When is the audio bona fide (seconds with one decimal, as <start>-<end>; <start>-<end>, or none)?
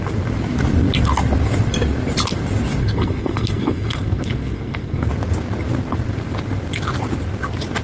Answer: 0.0-2.8; 5.1-7.8